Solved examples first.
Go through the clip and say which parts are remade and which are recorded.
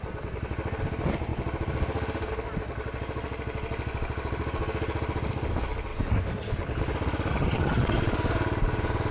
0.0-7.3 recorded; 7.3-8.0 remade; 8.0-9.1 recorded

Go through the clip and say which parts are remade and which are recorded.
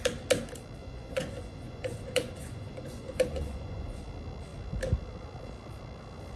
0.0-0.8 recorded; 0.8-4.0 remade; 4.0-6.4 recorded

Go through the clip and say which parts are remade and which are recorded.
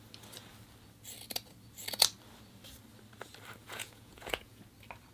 0.0-3.6 recorded; 3.6-4.6 remade; 4.6-5.1 recorded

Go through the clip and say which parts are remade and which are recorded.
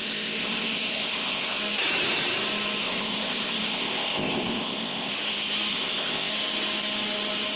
0.0-1.6 remade; 1.6-2.8 recorded; 2.8-5.1 remade; 5.1-5.7 recorded; 5.7-6.3 remade; 6.3-7.6 recorded